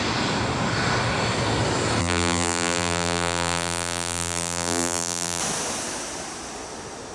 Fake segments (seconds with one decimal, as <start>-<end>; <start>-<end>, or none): 2.0-5.4